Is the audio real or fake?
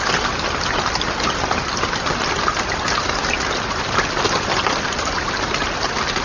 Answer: real